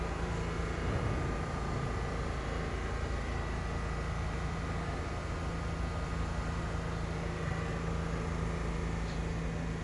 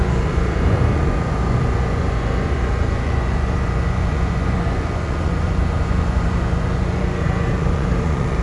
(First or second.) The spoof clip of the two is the second